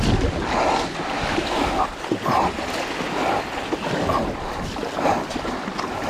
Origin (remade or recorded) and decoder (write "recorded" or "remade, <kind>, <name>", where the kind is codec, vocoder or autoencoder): recorded